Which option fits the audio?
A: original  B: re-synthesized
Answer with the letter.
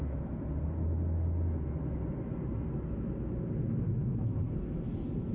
A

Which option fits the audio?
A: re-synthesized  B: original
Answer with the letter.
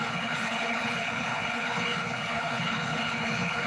A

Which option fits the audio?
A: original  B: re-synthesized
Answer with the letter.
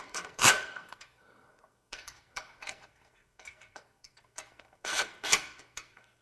B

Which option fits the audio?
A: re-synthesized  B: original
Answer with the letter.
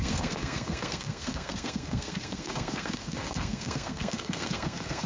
A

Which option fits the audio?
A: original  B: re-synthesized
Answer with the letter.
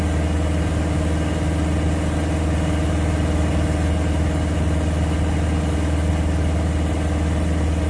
A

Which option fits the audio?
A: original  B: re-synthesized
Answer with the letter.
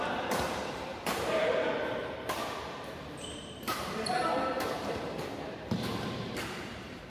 B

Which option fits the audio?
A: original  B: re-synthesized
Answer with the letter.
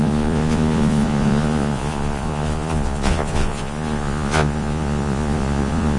B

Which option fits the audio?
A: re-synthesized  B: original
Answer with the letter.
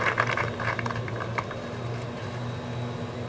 B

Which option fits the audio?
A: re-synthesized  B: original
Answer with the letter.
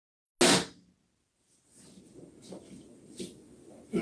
B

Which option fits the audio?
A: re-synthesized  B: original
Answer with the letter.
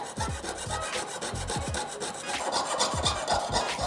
B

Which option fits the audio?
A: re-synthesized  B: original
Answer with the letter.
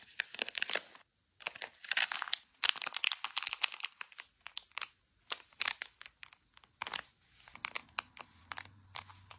B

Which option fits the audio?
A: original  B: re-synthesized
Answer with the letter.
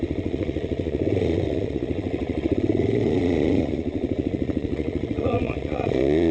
B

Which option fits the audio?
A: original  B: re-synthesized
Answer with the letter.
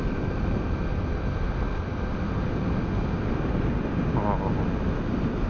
A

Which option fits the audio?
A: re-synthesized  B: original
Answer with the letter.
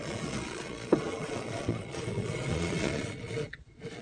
A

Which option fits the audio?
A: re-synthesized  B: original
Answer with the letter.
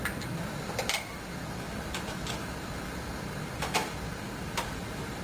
A